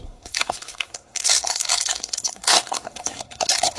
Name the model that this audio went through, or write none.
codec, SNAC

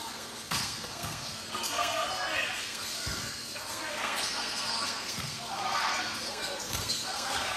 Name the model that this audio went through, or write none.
codec, SNAC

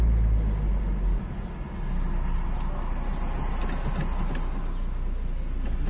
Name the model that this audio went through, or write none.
none